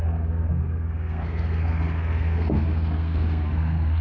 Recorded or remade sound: remade